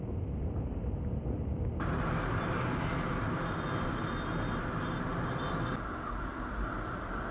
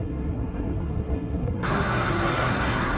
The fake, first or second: second